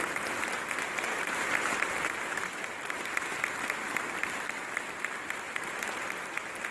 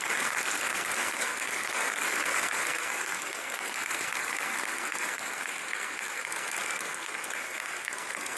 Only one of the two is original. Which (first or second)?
first